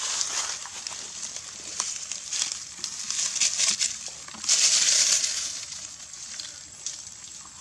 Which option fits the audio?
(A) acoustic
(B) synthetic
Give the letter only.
A